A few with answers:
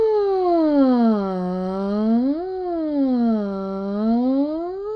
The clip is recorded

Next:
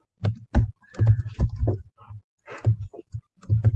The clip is recorded